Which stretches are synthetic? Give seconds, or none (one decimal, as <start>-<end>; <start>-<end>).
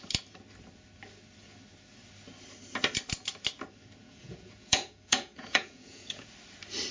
4.0-6.3